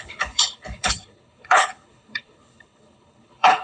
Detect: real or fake fake